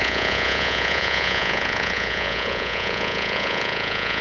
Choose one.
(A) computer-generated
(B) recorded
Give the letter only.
A